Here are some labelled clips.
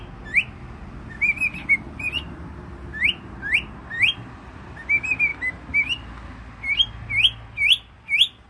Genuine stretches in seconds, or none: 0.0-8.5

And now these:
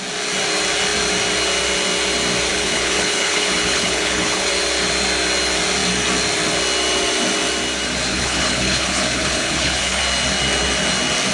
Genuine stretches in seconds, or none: 0.0-2.5; 4.5-8.1; 10.0-11.3